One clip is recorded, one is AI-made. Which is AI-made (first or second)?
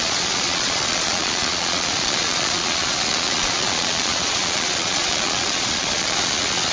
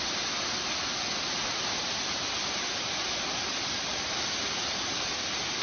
first